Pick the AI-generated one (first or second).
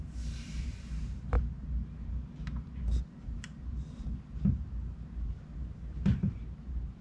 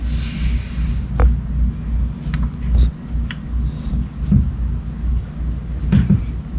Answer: first